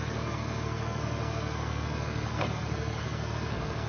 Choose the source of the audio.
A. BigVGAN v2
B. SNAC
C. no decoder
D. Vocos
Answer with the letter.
B